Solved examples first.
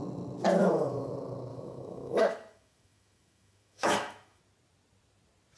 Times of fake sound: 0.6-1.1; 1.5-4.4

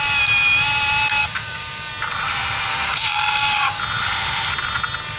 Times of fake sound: 1.2-1.9; 2.7-3.8

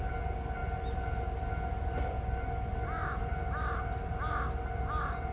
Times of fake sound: none

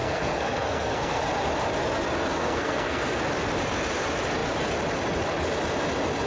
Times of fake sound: 0.0-1.2; 2.3-3.2